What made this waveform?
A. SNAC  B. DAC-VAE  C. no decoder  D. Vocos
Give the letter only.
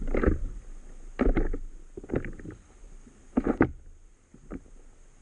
C